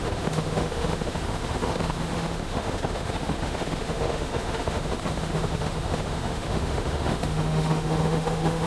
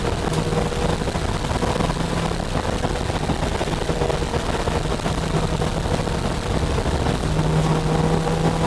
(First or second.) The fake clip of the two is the first